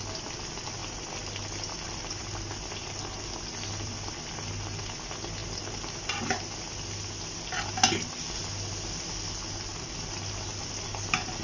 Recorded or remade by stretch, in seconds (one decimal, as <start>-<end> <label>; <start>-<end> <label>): 0.0-0.8 recorded; 0.8-4.8 remade; 4.8-5.4 recorded; 5.4-6.4 remade; 6.4-11.4 recorded